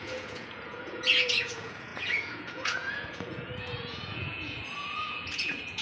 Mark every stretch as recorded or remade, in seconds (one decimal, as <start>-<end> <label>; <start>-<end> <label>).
0.0-5.8 remade